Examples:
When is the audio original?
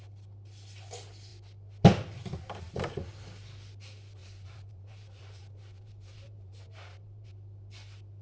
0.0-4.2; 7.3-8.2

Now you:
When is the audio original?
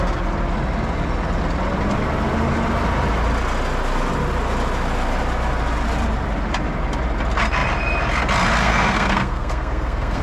0.0-8.6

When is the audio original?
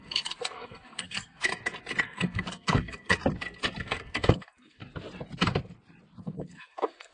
1.5-2.0; 3.2-3.8; 4.8-6.2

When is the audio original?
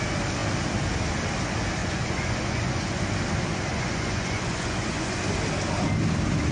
0.0-1.8; 3.0-3.7; 5.2-6.5